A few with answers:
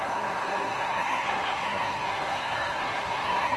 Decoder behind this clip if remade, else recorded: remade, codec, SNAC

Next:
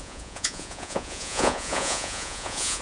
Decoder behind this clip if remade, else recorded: remade, vocoder, Vocos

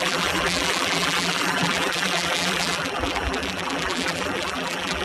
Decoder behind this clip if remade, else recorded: remade, vocoder, BigVGAN v2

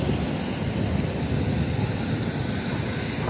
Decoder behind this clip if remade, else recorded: recorded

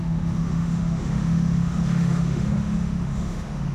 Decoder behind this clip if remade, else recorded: remade, autoencoder, DAC-VAE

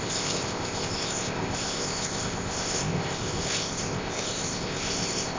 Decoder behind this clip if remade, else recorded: remade, codec, ZipCodec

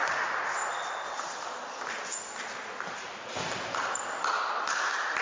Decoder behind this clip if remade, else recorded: recorded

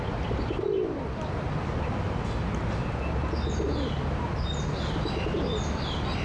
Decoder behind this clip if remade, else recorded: recorded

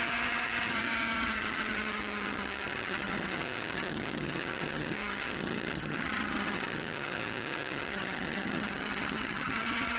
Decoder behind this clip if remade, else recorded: remade, vocoder, HiFi-GAN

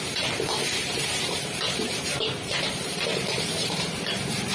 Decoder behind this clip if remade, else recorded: remade, vocoder, BigVGAN v2